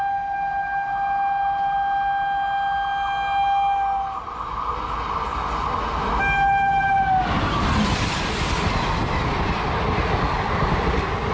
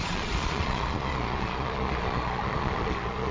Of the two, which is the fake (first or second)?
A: second